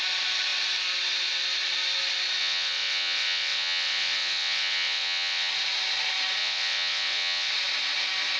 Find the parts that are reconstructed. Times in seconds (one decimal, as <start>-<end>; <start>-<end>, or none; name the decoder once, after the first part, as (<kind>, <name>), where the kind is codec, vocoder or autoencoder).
2.4-5.5 (vocoder, WaveNeXt); 6.4-7.5